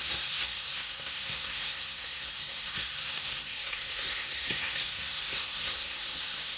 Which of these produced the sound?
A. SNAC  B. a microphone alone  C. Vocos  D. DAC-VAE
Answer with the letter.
A